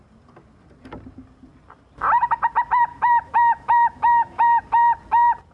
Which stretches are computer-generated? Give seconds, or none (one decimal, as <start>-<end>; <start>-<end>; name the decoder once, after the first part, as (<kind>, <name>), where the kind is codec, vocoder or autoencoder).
2.9-4.6 (autoencoder, DAC-VAE)